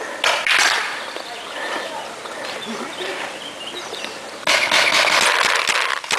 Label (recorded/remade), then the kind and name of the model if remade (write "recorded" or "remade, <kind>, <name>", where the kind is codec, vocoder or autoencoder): recorded